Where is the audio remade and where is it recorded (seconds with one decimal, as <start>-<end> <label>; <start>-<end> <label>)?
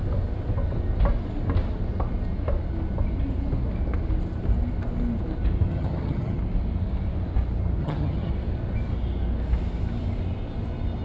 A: 0.0-5.7 recorded; 5.7-6.4 remade; 6.4-7.8 recorded; 7.8-8.3 remade; 8.3-11.0 recorded